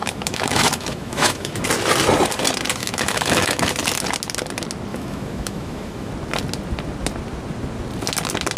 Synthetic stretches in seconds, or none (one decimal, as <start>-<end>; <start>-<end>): 0.0-1.7; 2.8-3.7; 4.9-6.1